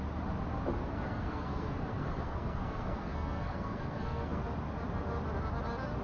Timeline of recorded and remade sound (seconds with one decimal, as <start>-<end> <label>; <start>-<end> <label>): 0.0-0.8 recorded; 0.8-4.4 remade; 4.4-6.0 recorded

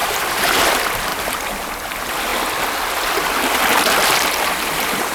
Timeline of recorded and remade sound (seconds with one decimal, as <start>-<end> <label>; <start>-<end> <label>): 0.0-0.6 remade; 0.6-1.1 recorded; 1.1-1.7 remade; 1.7-5.1 recorded

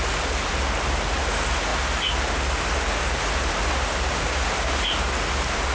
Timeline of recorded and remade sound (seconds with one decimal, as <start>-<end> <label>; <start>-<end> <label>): 0.0-5.7 recorded

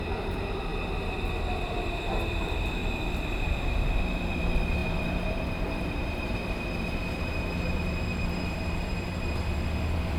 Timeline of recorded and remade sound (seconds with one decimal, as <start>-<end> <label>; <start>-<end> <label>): 0.0-0.7 remade; 0.7-1.7 recorded; 1.7-2.8 remade; 2.8-3.4 recorded; 3.4-10.2 remade